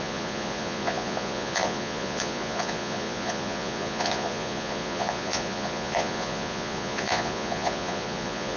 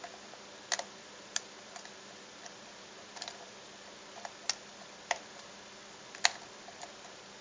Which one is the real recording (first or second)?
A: second